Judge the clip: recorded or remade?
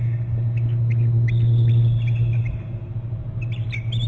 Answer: recorded